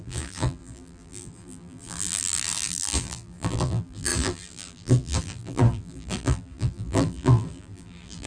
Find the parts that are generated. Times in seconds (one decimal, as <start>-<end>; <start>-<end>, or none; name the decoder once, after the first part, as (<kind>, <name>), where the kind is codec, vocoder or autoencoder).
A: 0.0-8.3 (vocoder, BigVGAN v2)